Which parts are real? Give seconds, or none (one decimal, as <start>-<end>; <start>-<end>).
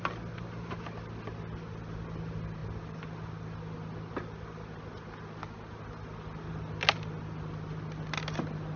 0.0-8.8